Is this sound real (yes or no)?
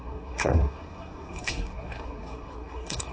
no